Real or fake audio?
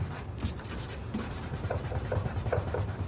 fake